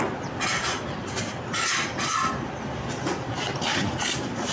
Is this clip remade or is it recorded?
recorded